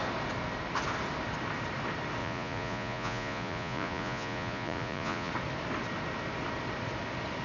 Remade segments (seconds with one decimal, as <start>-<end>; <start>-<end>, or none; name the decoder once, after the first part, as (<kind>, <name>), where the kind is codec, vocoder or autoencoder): 2.2-5.3 (vocoder, Vocos)